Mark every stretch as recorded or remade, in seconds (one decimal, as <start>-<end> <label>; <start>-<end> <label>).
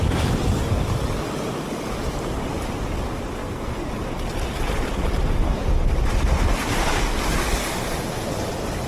0.0-3.4 recorded; 3.4-3.9 remade; 3.9-8.9 recorded